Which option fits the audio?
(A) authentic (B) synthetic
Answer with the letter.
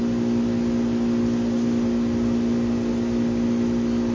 A